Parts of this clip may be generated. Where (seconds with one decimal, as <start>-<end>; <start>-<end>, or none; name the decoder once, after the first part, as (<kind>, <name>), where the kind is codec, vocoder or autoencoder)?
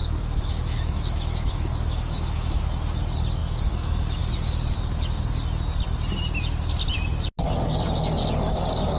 0.0-2.6 (autoencoder, DAC-VAE); 3.4-4.2